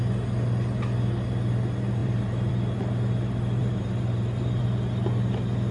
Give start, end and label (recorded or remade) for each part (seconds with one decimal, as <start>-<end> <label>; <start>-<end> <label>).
0.0-2.0 recorded; 2.0-2.5 remade; 2.5-3.6 recorded; 3.6-4.6 remade; 4.6-5.7 recorded